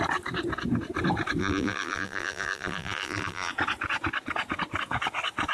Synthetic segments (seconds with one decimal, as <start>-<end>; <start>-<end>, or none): 1.4-3.5